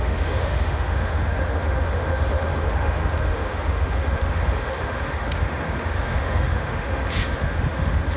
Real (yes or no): no